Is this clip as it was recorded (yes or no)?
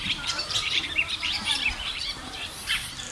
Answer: no